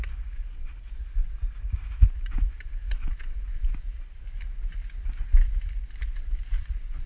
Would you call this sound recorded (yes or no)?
yes